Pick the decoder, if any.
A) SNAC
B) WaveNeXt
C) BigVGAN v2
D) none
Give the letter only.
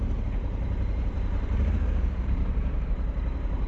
C